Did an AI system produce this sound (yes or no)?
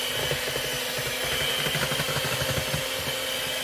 no